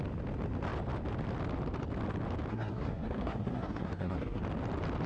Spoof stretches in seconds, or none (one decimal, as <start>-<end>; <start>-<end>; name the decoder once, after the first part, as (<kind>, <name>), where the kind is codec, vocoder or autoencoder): 2.5-4.4 (codec, SNAC)